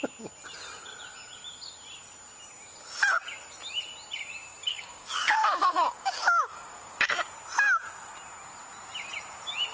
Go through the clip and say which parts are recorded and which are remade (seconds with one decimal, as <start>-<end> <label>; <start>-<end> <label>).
0.0-4.6 recorded; 4.6-7.0 remade; 7.0-9.7 recorded